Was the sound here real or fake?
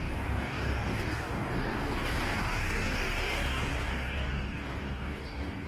fake